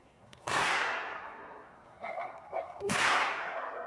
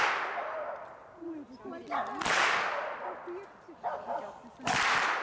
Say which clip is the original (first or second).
second